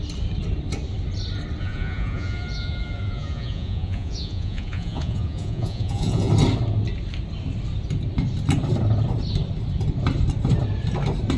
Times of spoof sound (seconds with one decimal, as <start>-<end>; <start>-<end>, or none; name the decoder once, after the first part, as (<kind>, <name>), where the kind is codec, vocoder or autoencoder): 1.6-6.3 (vocoder, Vocos)